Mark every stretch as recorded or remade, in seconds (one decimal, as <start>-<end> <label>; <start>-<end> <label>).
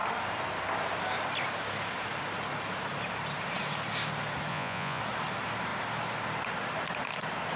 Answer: 0.0-4.5 recorded; 4.5-5.0 remade; 5.0-7.6 recorded